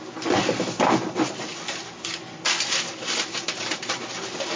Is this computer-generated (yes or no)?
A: no